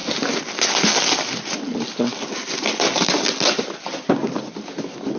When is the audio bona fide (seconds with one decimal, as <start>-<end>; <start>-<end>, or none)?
0.0-5.2